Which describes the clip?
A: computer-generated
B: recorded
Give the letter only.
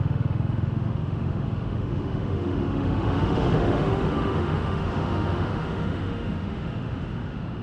A